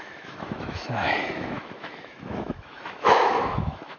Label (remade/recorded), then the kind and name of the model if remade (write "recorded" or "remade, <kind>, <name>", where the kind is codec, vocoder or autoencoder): remade, autoencoder, DAC-VAE